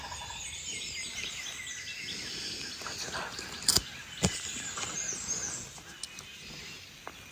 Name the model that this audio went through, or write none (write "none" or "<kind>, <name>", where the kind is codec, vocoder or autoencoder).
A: none